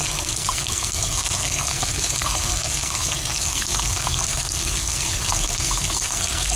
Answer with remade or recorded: remade